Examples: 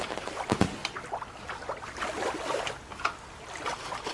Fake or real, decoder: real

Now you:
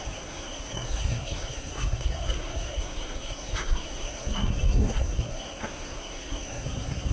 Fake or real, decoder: fake, codec, SNAC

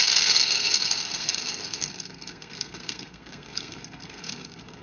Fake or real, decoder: fake, codec, SNAC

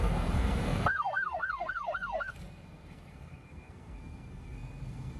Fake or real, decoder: fake, codec, SNAC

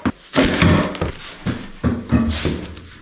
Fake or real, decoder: real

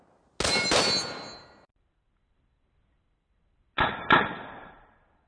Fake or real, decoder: real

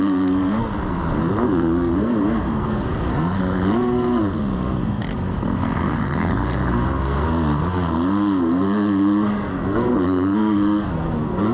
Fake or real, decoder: fake, codec, SNAC